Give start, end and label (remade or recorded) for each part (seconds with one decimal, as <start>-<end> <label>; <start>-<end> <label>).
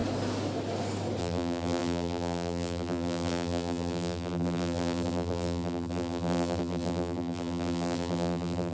0.0-1.2 recorded; 1.2-8.7 remade